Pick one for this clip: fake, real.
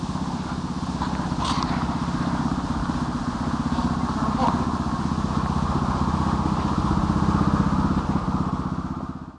real